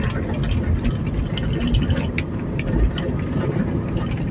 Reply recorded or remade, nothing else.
recorded